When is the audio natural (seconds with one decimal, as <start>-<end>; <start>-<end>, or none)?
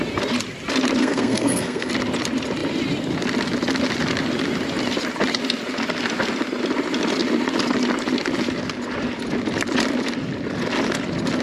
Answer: 0.0-1.0; 1.9-11.4